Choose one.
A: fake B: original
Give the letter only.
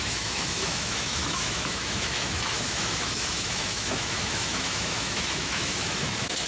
A